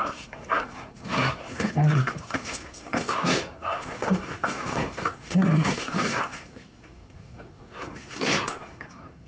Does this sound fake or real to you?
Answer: fake